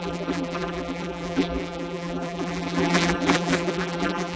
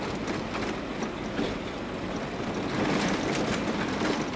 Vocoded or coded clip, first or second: first